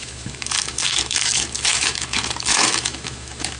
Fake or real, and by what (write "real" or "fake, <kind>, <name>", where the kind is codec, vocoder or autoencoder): fake, autoencoder, DAC-VAE